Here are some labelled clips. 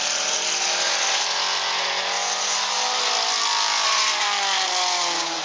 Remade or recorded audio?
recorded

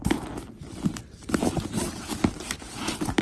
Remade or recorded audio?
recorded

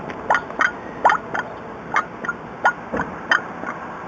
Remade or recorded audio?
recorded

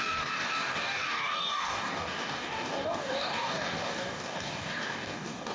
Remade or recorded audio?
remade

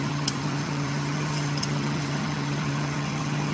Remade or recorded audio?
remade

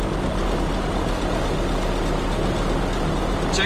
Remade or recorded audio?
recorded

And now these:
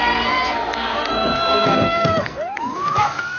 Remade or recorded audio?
remade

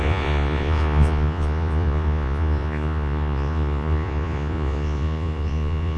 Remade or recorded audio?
remade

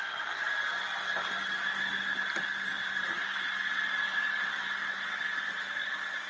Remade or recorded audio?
recorded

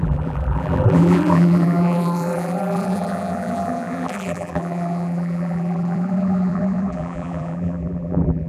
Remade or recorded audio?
remade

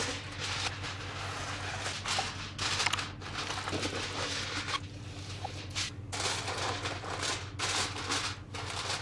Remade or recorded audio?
recorded